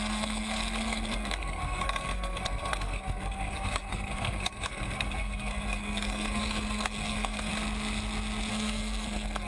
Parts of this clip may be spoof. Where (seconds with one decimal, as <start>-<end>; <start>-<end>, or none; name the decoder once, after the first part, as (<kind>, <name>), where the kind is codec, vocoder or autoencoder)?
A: 0.0-7.5 (codec, SNAC); 8.5-9.5